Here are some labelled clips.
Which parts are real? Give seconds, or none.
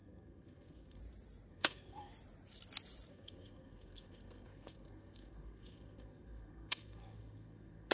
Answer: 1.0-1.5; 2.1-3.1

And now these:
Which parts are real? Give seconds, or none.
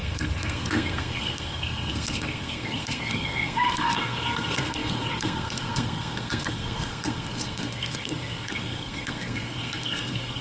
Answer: none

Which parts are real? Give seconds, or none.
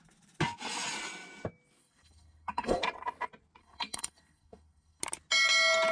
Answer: 0.0-1.8; 2.8-3.6; 5.0-5.9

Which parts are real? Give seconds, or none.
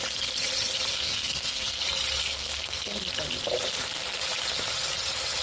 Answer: 0.0-0.9; 1.8-2.2; 3.0-5.4